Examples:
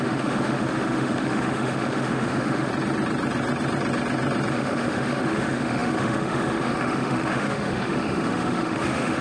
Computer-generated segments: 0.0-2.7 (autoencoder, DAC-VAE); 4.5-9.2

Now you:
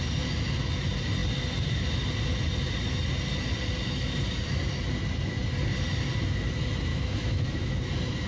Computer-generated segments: 6.9-7.9 (autoencoder, DAC-VAE)